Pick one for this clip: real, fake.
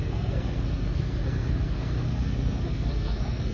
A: fake